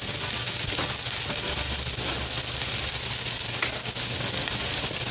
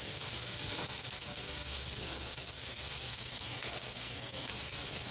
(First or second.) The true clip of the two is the first